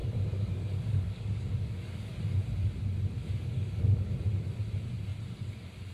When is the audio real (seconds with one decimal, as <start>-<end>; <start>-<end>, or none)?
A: 2.2-3.2; 4.1-5.9